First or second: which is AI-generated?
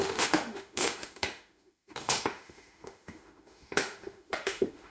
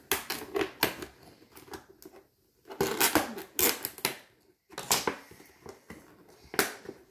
first